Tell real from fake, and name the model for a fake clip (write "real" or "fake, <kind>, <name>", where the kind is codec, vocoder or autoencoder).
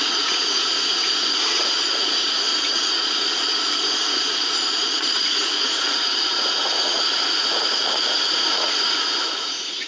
fake, vocoder, Vocos